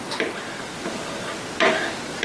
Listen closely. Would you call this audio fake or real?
real